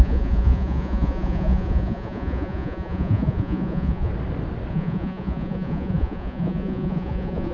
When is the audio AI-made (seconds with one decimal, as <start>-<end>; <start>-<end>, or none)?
0.0-4.1; 4.7-7.5